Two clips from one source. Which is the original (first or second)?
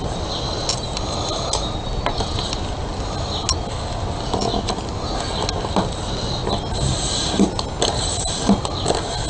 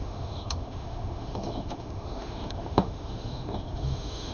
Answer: first